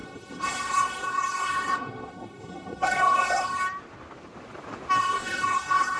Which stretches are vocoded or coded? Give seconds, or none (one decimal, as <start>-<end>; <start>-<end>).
0.0-3.6; 5.0-6.0